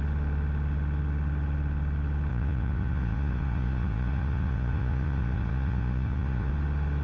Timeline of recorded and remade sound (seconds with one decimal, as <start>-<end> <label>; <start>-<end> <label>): 0.0-2.3 recorded; 2.3-6.5 remade; 6.5-7.0 recorded